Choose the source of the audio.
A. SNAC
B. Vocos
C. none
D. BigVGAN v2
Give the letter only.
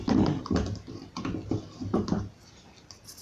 C